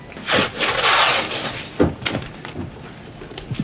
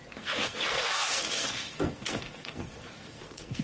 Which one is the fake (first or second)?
second